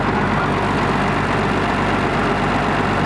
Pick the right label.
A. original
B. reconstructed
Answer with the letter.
A